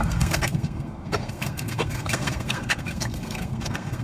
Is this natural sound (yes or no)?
no